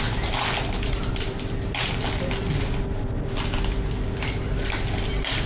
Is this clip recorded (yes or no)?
yes